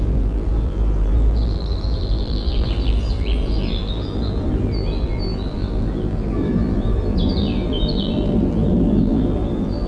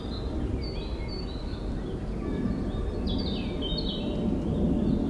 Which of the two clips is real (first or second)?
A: second